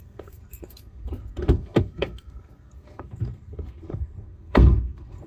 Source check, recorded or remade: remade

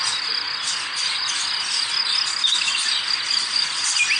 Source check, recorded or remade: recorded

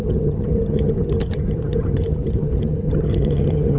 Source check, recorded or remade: remade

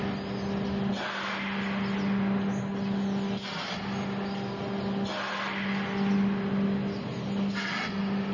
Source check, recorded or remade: recorded